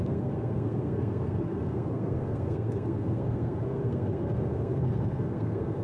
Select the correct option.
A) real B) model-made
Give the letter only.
B